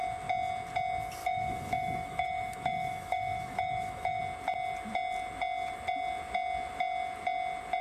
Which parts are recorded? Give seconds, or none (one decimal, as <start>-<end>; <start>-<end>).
0.0-1.2; 4.2-7.8